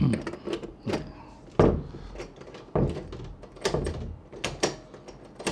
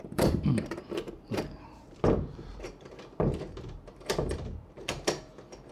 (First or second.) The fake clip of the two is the second